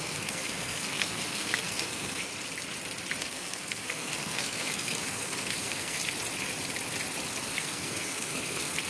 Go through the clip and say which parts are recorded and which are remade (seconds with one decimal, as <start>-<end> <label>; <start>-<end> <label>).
0.0-2.3 remade; 2.3-3.2 recorded; 3.2-6.0 remade; 6.0-7.4 recorded; 7.4-8.9 remade